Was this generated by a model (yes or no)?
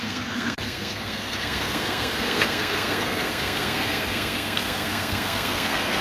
yes